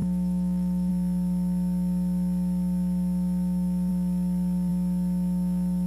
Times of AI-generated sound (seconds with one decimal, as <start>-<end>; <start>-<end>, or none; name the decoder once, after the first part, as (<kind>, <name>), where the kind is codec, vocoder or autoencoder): 0.0-0.9 (autoencoder, DAC-VAE)